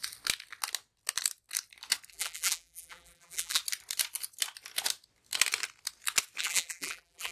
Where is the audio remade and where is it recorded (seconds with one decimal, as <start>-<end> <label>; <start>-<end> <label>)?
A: 0.0-2.1 recorded; 2.1-3.6 remade; 3.6-6.4 recorded; 6.4-7.3 remade